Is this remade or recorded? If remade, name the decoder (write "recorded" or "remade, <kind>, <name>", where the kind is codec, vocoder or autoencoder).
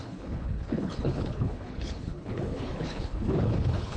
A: remade, codec, HILCodec